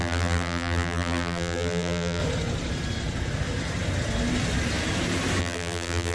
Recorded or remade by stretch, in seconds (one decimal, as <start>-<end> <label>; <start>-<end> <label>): 0.0-2.2 remade; 2.2-5.4 recorded; 5.4-6.1 remade